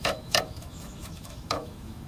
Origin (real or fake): fake